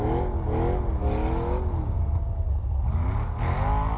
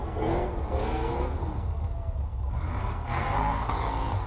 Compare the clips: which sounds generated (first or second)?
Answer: second